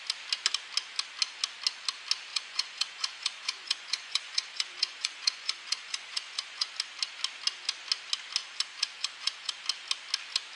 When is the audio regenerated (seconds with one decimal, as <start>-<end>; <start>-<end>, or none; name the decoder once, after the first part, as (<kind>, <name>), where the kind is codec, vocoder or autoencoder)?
2.3-6.7 (vocoder, Vocos); 8.4-9.5